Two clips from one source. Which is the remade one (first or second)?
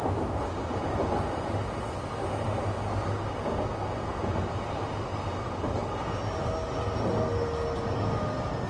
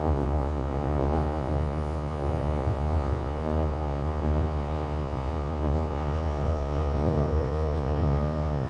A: second